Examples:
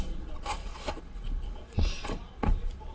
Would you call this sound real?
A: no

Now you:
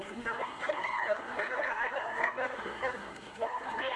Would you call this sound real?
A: no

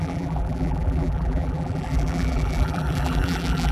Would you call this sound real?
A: no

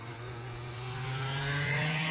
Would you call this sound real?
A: no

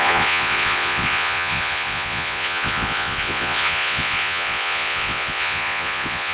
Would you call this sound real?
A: no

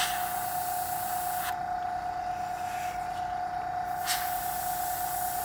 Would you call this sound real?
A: yes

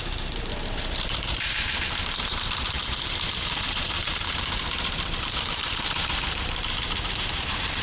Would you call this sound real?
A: no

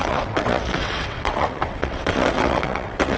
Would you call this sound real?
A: no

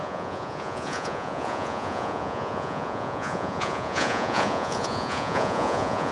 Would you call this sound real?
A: no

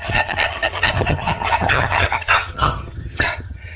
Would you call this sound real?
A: no